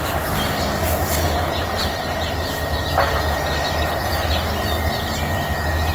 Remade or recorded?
recorded